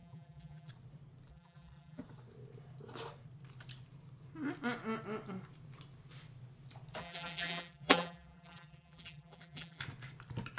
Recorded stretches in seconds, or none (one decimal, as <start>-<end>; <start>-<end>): 0.7-1.3; 2.0-7.0; 9.8-10.6